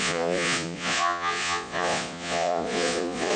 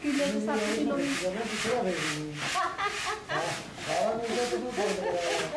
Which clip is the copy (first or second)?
first